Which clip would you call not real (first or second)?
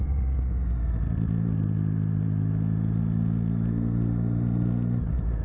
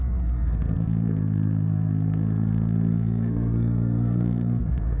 second